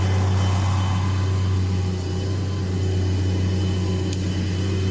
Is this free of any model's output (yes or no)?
yes